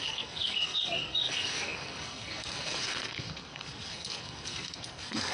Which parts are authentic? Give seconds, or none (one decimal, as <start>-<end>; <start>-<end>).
none